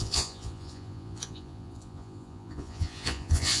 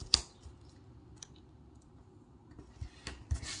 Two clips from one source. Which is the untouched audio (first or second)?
second